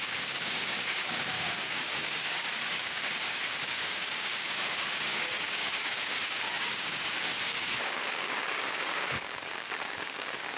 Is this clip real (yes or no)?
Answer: no